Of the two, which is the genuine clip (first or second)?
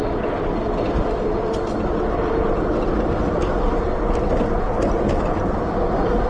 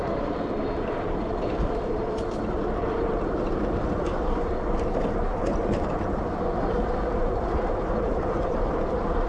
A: first